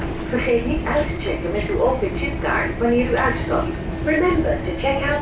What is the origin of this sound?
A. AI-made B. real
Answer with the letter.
B